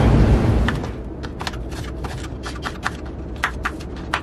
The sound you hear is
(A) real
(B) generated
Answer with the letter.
A